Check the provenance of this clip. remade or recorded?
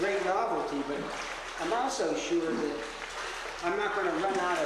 recorded